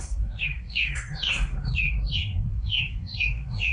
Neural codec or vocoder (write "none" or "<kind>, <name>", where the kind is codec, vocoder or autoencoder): codec, SNAC